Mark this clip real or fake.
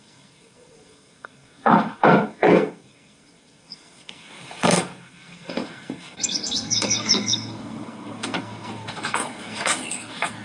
fake